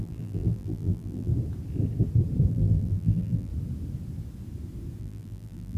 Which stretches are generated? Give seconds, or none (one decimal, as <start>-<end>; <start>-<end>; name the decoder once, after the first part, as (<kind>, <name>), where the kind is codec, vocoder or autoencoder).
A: 0.0-1.3 (vocoder, BigVGAN v2); 2.5-3.5; 5.0-5.8